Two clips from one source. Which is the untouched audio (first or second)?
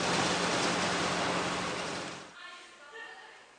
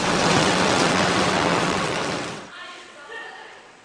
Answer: first